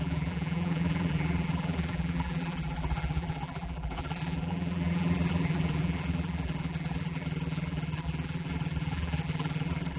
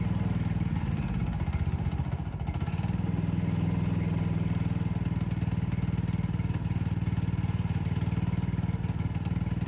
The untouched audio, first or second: second